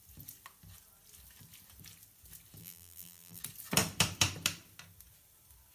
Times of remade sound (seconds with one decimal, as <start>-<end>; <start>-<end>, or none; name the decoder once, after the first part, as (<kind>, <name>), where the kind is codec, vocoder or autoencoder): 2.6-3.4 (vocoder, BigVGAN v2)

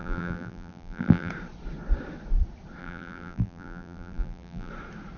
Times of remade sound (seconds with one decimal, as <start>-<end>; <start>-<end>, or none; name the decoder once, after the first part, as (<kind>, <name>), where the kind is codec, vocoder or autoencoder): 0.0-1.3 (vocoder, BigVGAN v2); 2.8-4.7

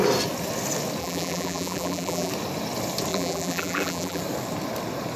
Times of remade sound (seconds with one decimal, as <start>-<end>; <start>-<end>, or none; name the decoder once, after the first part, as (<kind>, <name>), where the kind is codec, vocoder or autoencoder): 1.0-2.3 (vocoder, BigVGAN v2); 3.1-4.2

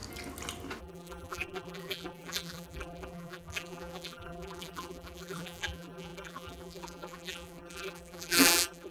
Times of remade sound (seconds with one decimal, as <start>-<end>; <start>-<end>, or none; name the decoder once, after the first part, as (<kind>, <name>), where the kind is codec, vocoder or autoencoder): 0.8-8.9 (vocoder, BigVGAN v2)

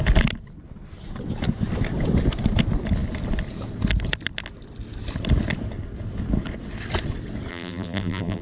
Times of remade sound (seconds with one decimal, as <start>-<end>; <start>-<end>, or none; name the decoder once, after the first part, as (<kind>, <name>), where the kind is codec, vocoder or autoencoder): 7.5-8.4 (vocoder, BigVGAN v2)

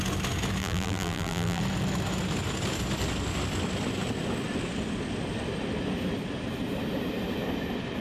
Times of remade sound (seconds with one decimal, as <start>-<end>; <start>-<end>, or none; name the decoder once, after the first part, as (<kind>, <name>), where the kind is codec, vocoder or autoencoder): 0.6-1.6 (vocoder, BigVGAN v2)